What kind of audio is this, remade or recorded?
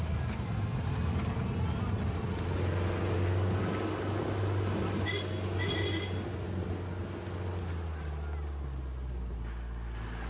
recorded